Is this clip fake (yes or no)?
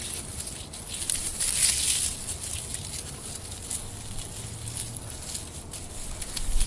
no